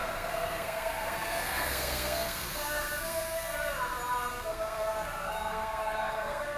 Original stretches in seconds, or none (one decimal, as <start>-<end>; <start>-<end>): 3.7-4.3

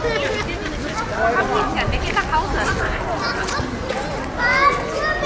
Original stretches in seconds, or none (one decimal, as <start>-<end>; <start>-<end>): 0.0-5.3